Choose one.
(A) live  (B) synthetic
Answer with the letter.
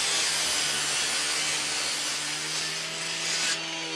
A